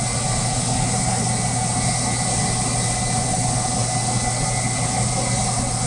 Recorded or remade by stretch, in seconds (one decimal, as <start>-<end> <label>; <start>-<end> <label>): 0.0-5.9 recorded